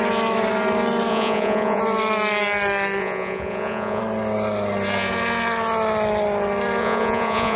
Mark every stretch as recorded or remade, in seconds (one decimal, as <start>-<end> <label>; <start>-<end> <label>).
0.0-1.1 recorded; 1.1-1.8 remade; 1.8-3.0 recorded; 3.0-4.0 remade; 4.0-6.8 recorded; 6.8-7.6 remade